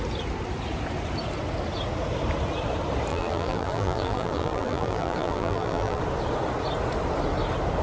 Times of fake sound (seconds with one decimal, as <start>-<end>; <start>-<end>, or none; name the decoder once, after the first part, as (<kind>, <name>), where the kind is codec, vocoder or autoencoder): 3.1-6.0 (vocoder, BigVGAN v2)